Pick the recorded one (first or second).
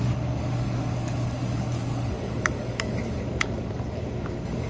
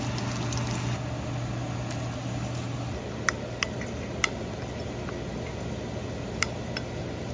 second